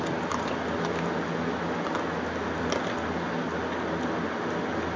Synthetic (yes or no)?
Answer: no